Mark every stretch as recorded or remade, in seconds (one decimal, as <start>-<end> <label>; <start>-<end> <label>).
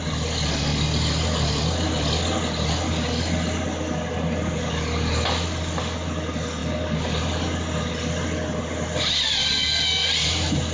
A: 0.0-10.7 recorded